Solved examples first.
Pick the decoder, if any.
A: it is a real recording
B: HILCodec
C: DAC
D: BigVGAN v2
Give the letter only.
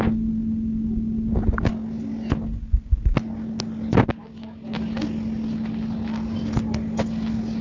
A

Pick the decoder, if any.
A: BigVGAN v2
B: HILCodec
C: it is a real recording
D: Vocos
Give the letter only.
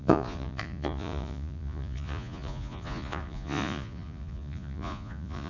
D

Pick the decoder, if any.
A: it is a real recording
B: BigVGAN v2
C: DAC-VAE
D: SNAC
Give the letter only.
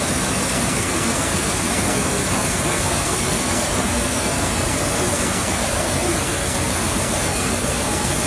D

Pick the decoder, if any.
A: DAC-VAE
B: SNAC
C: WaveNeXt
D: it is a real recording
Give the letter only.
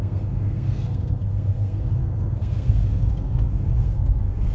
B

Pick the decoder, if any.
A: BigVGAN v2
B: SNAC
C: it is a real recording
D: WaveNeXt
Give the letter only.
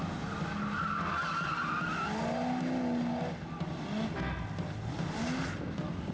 C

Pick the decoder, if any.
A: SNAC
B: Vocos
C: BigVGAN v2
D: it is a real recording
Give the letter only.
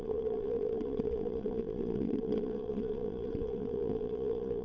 B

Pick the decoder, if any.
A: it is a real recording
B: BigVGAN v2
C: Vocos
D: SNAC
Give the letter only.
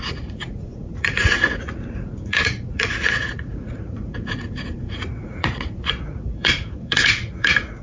C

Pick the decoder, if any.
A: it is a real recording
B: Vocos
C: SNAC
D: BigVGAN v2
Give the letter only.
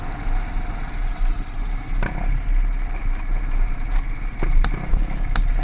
A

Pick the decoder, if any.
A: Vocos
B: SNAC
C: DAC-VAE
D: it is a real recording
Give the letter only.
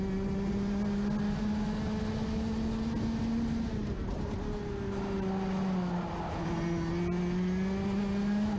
D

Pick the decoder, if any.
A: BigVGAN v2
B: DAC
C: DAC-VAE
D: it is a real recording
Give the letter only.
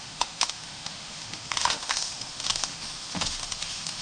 C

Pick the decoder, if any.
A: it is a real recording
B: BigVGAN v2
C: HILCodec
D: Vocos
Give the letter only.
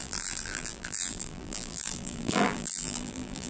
B